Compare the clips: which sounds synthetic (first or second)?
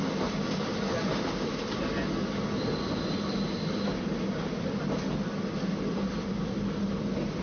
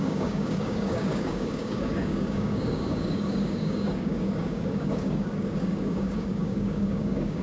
second